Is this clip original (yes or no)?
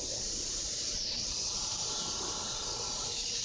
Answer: no